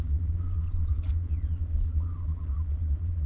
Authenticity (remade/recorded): remade